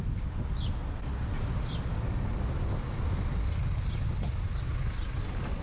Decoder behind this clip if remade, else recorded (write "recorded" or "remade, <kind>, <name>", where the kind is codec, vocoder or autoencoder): recorded